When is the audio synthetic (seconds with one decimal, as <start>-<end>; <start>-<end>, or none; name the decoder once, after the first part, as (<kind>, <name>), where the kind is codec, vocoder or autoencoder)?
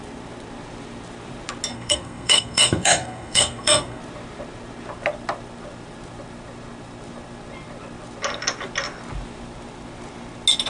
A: 1.7-4.0 (codec, SNAC)